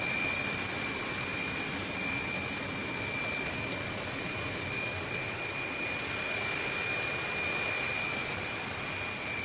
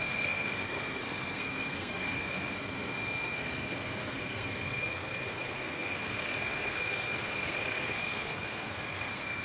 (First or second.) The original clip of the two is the first